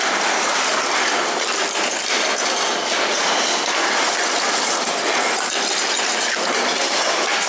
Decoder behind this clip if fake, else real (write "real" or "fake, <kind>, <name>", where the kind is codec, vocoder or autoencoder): real